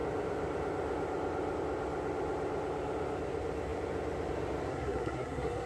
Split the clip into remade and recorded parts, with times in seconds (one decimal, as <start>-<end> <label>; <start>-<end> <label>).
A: 0.0-4.7 recorded; 4.7-5.7 remade